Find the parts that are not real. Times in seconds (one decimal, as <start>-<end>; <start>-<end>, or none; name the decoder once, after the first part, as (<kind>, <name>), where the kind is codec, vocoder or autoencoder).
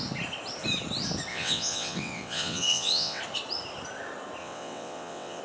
1.3-3.2 (vocoder, WaveNeXt); 4.4-5.4